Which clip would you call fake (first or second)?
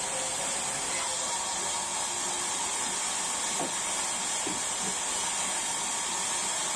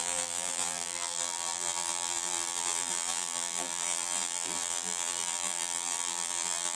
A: second